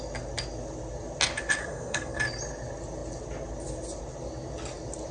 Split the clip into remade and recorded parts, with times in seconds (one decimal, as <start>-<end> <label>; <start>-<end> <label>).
0.0-1.6 recorded; 1.6-2.2 remade; 2.2-5.1 recorded